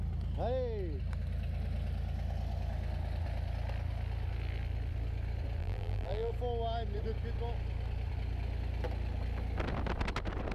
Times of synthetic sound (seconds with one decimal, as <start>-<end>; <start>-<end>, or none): 5.6-6.3